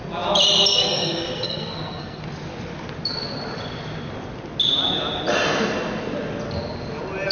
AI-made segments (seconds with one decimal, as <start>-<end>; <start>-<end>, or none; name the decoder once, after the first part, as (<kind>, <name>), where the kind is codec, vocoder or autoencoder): 0.7-2.2 (codec, SNAC)